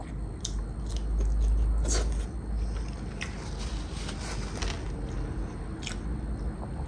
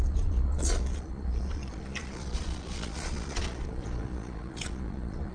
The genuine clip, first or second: first